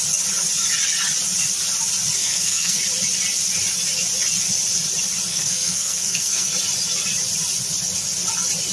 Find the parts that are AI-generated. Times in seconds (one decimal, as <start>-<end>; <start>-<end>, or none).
2.2-2.8; 5.3-6.5